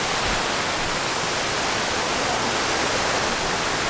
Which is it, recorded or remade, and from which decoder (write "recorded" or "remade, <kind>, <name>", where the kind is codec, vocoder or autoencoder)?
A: recorded